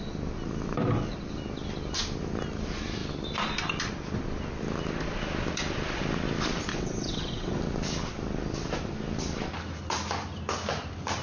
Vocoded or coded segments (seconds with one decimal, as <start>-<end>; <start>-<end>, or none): 6.7-7.6